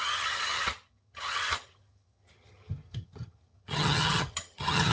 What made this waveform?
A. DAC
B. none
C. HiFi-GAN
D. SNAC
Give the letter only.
C